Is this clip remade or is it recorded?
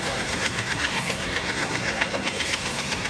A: remade